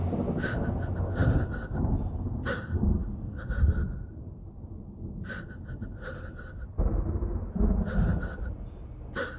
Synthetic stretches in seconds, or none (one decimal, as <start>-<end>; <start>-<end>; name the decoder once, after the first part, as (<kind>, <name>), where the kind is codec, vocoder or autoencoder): none